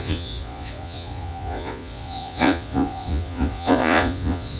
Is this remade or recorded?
remade